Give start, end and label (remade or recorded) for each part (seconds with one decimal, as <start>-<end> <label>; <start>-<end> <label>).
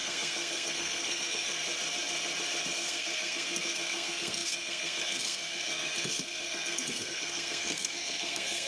0.0-1.6 remade; 1.6-2.7 recorded; 2.7-8.7 remade